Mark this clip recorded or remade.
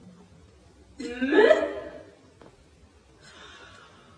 recorded